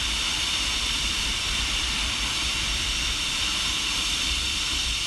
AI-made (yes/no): yes